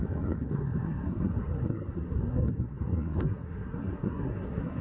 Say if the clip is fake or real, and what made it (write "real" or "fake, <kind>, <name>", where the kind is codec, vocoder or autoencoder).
fake, codec, SNAC